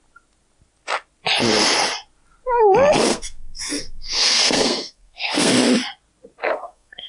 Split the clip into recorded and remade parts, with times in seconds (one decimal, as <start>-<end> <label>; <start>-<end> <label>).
0.0-3.1 recorded; 3.1-5.5 remade; 5.5-6.4 recorded; 6.4-7.1 remade